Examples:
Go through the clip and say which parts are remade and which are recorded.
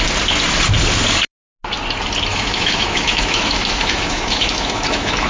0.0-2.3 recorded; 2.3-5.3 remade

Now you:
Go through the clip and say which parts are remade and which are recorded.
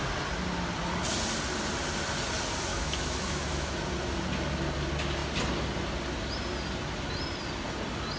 0.0-2.7 recorded; 2.7-3.8 remade; 3.8-8.2 recorded